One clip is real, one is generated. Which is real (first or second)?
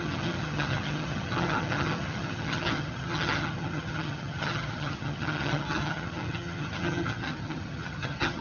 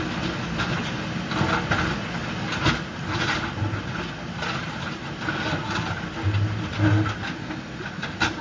second